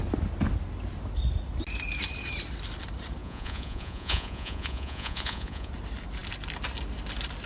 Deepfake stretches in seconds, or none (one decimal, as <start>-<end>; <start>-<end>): 3.2-5.7